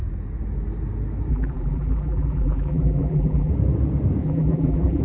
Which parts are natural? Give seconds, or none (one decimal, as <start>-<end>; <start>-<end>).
0.0-1.3; 3.5-4.2